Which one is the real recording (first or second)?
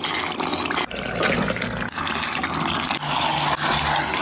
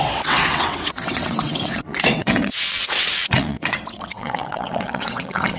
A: first